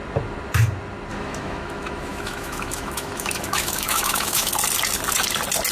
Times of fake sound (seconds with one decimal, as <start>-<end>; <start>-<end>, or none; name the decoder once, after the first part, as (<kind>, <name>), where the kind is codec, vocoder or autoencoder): 1.1-4.5 (autoencoder, DAC-VAE)